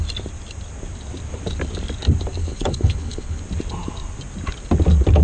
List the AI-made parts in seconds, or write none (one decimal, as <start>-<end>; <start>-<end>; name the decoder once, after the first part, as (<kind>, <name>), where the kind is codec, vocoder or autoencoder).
2.4-3.4 (codec, HILCodec)

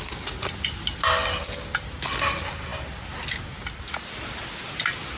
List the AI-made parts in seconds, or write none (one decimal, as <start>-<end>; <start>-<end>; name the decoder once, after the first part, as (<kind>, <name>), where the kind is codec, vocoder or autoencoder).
none

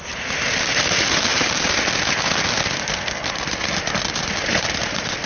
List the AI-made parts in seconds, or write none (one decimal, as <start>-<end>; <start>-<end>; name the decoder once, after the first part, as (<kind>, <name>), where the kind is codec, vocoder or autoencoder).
2.8-3.3 (codec, SNAC)

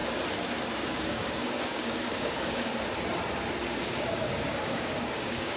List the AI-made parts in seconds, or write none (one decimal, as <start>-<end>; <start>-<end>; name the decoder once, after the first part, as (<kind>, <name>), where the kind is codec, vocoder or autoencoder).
0.9-2.7 (codec, DAC); 3.8-5.6